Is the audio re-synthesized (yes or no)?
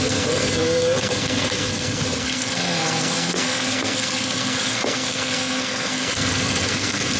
yes